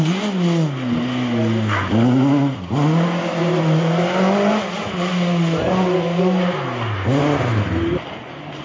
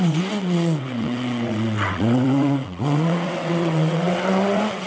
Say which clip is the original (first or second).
first